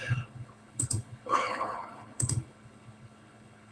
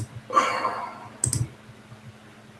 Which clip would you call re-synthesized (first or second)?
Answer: first